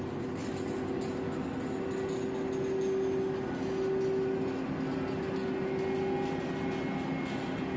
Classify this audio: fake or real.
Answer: real